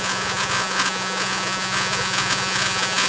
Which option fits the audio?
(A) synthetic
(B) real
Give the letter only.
A